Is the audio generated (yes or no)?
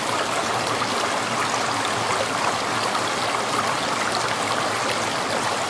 no